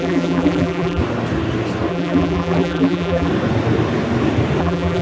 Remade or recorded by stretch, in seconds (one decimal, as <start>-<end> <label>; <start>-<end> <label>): 0.0-1.0 remade; 1.0-1.9 recorded; 1.9-3.3 remade; 3.3-4.6 recorded; 4.6-5.0 remade